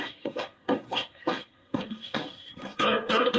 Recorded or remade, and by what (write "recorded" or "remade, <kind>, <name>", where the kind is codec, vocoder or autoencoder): remade, codec, SNAC